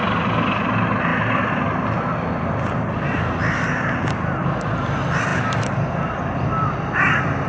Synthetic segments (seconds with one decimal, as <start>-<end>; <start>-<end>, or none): none

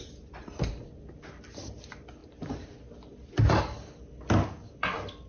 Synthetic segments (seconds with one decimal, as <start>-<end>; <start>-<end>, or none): 0.0-0.7; 2.2-3.6

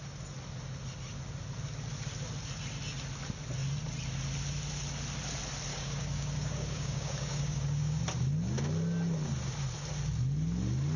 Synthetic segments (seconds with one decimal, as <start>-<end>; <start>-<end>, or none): 5.7-8.0

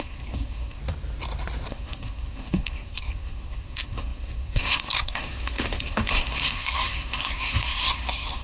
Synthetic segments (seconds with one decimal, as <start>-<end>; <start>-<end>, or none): 0.0-0.8; 1.7-8.4

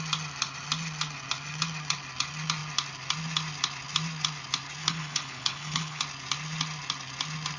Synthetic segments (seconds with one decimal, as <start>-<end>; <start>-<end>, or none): 4.8-6.0

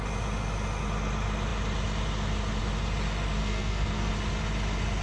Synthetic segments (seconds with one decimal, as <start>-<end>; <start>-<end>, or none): 3.4-4.1